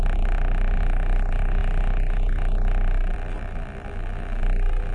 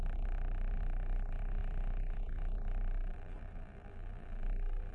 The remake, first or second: second